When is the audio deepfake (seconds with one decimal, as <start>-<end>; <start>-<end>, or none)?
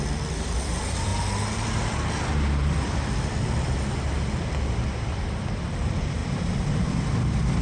0.0-1.1; 5.7-7.6